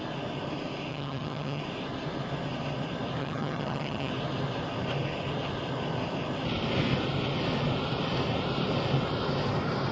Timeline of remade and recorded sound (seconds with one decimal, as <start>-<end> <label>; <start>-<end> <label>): 0.0-0.9 recorded; 0.9-1.6 remade; 1.6-3.2 recorded; 3.2-4.1 remade; 4.1-9.9 recorded